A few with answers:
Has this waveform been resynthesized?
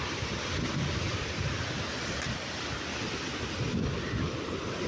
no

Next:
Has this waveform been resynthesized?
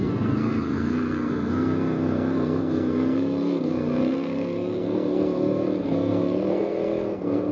yes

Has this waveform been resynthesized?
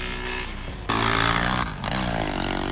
no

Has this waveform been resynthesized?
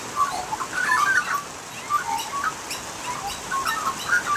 no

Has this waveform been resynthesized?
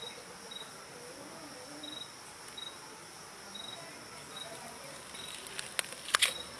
no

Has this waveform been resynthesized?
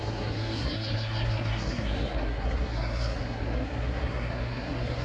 yes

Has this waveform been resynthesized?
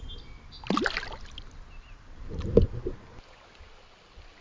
no